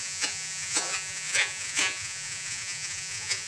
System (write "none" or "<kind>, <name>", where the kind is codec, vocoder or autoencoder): vocoder, Vocos